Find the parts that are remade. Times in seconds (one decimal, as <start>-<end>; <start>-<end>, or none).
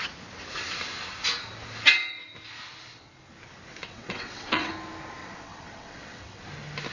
3.7-4.7; 5.2-6.4